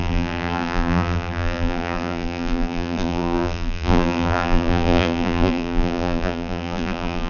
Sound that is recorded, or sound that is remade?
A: remade